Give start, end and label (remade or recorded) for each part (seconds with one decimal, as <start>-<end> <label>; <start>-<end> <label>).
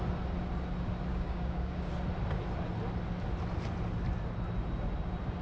0.0-1.1 recorded; 1.1-1.9 remade; 1.9-5.4 recorded